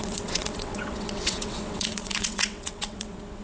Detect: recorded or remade remade